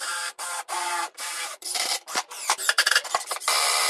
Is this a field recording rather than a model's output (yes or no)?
no